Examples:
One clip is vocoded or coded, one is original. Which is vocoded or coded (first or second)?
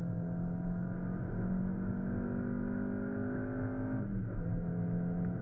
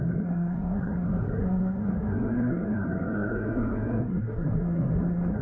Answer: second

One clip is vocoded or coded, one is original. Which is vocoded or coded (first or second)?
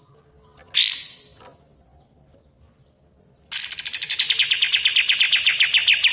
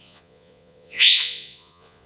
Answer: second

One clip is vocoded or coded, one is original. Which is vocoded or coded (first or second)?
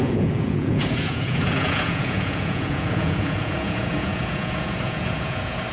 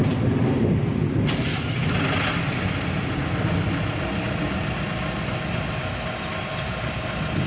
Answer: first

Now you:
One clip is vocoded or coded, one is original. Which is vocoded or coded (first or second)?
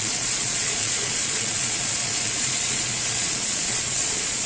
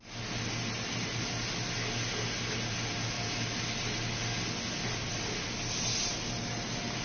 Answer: first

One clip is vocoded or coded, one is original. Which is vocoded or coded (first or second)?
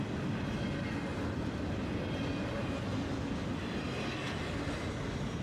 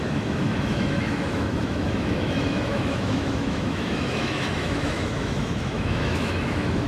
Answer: second